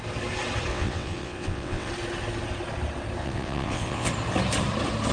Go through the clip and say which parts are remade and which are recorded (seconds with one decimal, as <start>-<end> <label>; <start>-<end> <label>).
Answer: 0.0-0.7 recorded; 0.7-1.9 remade; 1.9-3.2 recorded; 3.2-4.1 remade; 4.1-5.1 recorded